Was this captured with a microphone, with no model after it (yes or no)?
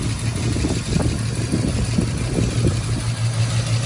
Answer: yes